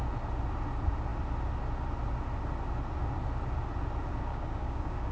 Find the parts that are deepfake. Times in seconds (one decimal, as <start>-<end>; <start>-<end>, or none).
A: 4.3-5.1